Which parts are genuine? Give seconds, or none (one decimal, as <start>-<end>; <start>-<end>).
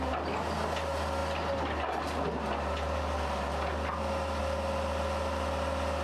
0.0-6.0